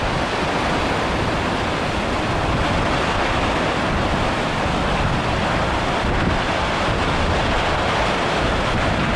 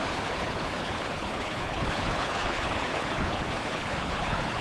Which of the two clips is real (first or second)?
first